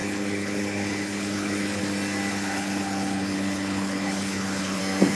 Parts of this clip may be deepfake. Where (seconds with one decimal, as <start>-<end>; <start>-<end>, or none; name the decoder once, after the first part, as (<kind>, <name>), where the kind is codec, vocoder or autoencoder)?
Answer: 0.0-1.8 (codec, HILCodec); 2.3-4.8